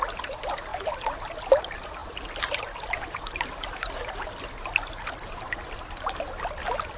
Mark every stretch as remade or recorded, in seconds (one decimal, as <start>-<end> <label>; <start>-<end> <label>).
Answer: 0.0-7.0 recorded